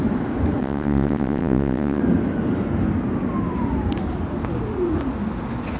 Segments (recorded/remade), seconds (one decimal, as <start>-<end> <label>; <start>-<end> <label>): 0.0-0.6 recorded; 0.6-2.0 remade; 2.0-5.8 recorded